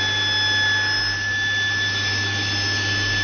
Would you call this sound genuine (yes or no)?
yes